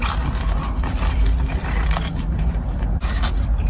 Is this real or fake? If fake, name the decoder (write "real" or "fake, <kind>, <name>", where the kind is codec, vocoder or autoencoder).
fake, vocoder, BigVGAN v2